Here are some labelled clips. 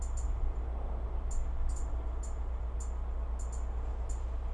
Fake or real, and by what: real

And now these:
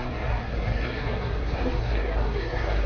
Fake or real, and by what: fake, codec, SNAC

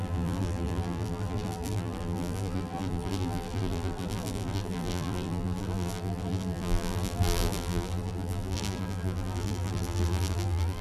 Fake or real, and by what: fake, vocoder, BigVGAN v2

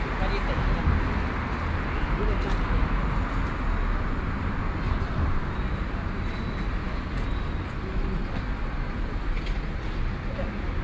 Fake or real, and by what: real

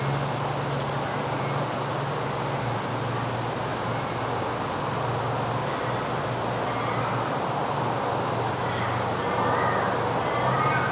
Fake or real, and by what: real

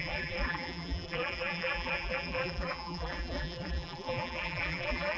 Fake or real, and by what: fake, vocoder, BigVGAN v2